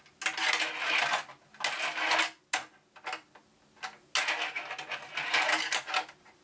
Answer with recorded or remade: recorded